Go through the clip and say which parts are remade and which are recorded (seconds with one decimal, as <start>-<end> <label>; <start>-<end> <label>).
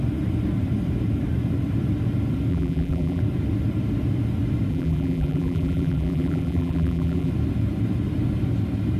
0.0-2.5 recorded; 2.5-3.2 remade; 3.2-4.7 recorded; 4.7-7.3 remade; 7.3-9.0 recorded